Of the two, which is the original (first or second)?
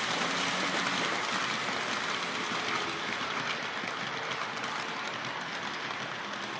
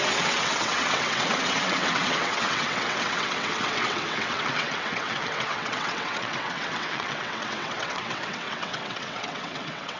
first